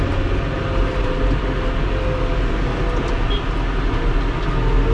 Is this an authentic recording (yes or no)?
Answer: yes